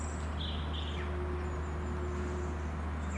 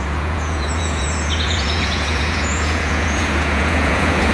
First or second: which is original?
first